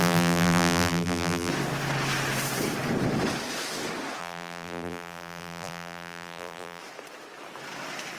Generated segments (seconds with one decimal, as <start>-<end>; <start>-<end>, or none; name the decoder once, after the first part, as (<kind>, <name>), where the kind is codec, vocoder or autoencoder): 0.0-1.5 (vocoder, BigVGAN v2); 4.2-6.8